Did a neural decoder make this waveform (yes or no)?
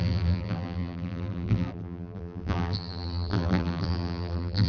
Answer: yes